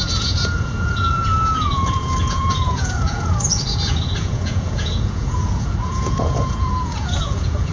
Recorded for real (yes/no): no